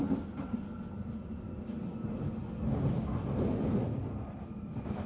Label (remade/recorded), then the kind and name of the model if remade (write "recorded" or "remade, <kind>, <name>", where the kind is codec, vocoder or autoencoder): recorded